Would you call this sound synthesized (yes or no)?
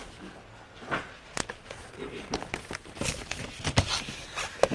no